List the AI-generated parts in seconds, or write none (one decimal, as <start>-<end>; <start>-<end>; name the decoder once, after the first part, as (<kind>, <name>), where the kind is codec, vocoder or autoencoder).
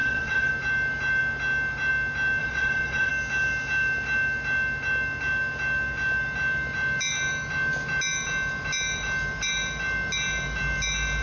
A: 0.0-0.5 (vocoder, WaveNeXt); 2.4-3.1